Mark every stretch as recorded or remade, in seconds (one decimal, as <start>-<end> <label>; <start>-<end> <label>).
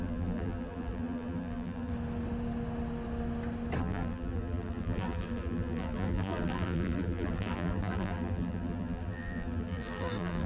0.0-1.9 remade; 1.9-3.8 recorded; 3.8-10.5 remade